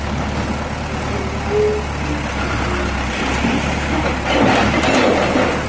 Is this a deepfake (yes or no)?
no